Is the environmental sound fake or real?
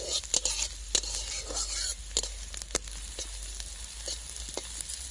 real